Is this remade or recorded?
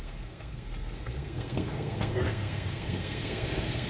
remade